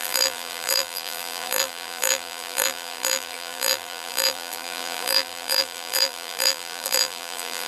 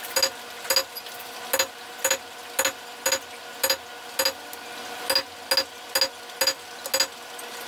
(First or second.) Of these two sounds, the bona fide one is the second